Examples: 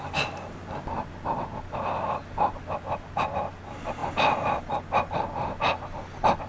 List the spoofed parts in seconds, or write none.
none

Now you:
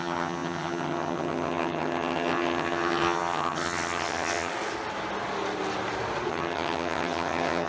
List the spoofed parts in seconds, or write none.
0.0-4.5 (vocoder, HiFi-GAN); 6.3-7.7

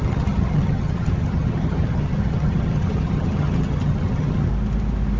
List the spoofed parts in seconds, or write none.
0.0-4.5 (vocoder, HiFi-GAN)